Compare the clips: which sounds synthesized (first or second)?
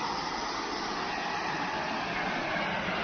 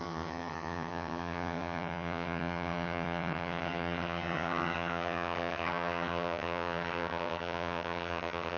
second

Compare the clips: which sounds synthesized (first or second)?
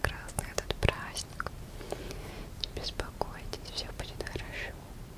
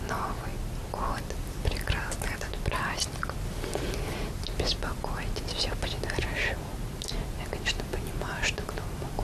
first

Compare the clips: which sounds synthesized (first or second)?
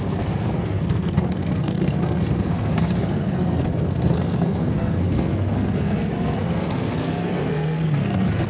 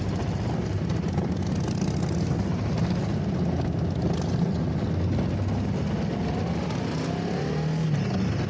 first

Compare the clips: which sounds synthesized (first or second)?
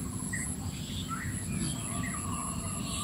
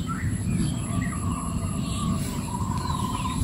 second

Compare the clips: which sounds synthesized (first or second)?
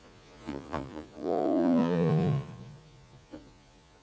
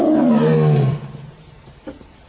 first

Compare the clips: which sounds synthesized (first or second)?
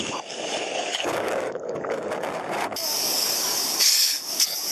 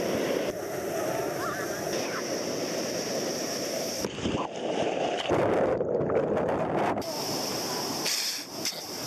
first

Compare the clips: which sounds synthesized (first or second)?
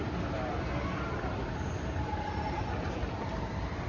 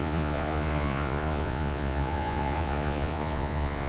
second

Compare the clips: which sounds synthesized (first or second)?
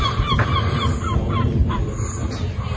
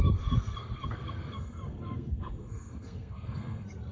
second